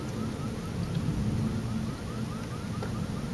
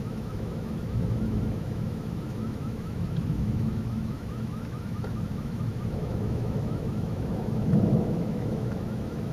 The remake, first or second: second